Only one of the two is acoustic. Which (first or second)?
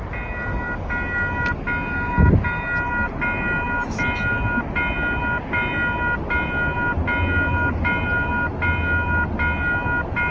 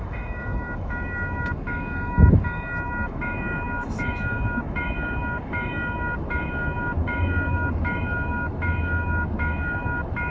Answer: first